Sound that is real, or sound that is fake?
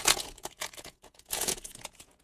fake